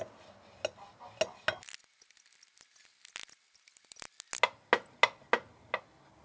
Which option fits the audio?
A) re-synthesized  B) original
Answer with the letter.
B